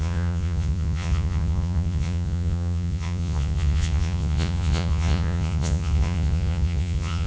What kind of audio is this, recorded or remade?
remade